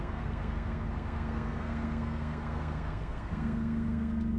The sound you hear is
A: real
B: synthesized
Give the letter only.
B